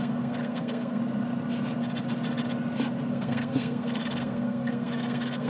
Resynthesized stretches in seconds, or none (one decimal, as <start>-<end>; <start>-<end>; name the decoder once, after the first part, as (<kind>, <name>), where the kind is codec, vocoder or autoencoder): 0.0-1.0 (codec, SNAC); 3.1-5.5